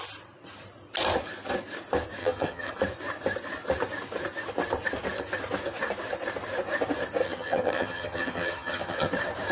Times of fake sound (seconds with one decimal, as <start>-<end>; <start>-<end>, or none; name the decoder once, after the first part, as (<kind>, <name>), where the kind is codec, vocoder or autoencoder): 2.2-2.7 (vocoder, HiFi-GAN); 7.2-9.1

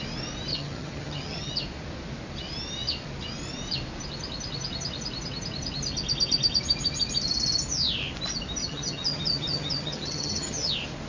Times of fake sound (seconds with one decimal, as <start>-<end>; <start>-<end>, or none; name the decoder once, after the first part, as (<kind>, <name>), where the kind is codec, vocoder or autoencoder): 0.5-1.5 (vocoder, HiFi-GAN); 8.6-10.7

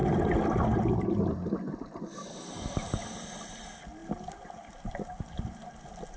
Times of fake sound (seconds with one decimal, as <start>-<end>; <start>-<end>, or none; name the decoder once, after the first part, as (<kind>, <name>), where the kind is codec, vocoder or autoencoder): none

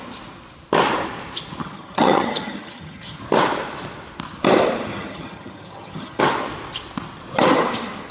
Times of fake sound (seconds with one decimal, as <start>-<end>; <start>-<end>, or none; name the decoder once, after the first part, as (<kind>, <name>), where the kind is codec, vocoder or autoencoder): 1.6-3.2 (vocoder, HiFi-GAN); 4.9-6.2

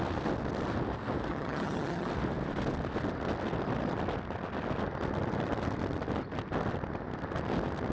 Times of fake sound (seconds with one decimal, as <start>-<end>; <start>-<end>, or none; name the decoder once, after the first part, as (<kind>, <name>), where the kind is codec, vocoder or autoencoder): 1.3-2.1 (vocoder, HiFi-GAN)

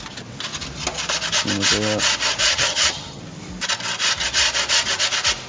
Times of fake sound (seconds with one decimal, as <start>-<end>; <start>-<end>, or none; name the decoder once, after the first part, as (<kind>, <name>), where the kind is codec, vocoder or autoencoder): 2.5-3.2 (vocoder, HiFi-GAN)